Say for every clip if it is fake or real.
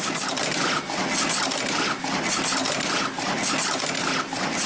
real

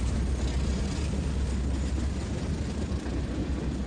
real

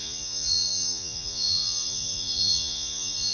fake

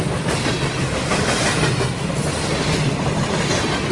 real